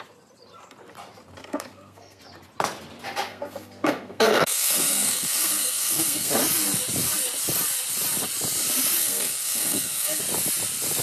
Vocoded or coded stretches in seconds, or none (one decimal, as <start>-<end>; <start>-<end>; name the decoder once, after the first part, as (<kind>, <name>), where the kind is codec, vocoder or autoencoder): 1.4-2.2 (codec, SNAC); 3.3-6.3; 9.0-10.2